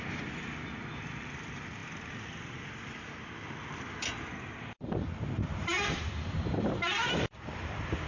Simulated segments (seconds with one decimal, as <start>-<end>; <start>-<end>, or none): 0.0-8.1